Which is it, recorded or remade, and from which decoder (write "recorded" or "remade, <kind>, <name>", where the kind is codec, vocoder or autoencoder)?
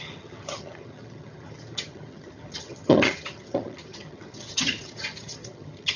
remade, vocoder, HiFi-GAN